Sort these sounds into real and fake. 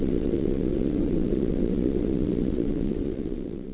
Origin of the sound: fake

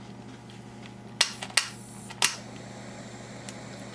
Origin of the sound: real